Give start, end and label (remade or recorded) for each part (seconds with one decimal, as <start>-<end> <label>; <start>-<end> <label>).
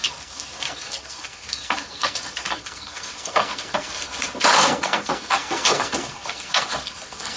0.0-7.4 remade